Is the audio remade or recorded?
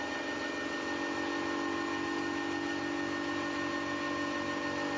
recorded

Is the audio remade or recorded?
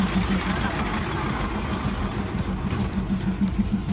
recorded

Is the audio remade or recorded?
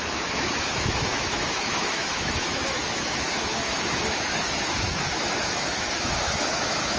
remade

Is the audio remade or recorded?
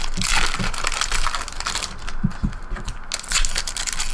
recorded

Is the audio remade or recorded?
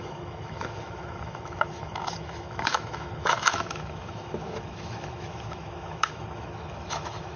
remade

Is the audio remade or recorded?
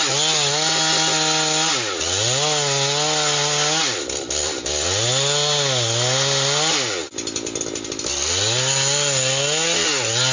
recorded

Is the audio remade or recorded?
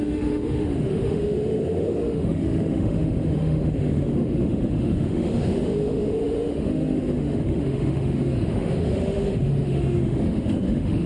remade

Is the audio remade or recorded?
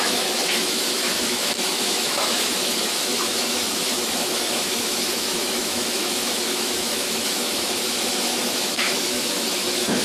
remade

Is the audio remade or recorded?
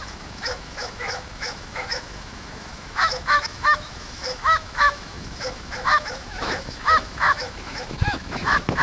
remade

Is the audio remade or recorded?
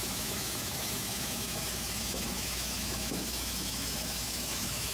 remade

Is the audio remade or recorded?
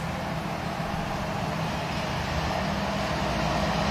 recorded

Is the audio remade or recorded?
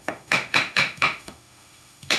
remade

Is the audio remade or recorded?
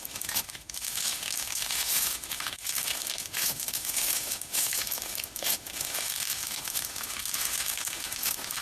remade